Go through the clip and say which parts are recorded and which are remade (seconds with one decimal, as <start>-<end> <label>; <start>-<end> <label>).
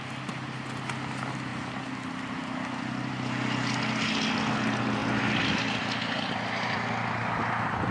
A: 0.0-5.0 recorded; 5.0-7.9 remade